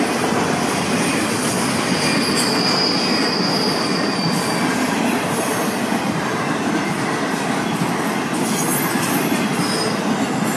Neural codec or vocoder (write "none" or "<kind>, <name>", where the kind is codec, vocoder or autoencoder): none